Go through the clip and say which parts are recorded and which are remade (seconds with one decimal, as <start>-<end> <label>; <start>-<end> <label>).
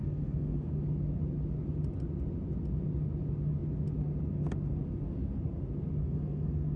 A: 0.0-0.7 remade; 0.7-6.0 recorded; 6.0-6.8 remade